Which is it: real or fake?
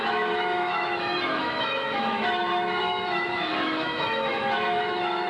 fake